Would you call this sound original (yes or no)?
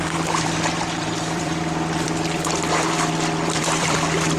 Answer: no